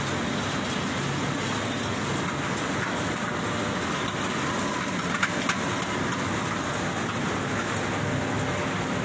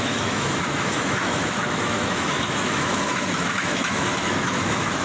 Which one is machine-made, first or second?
second